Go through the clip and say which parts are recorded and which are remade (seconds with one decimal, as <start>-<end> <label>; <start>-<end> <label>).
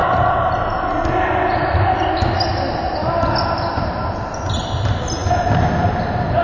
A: 0.0-6.4 recorded